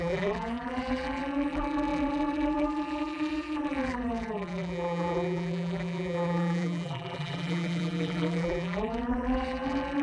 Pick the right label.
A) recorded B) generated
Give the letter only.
B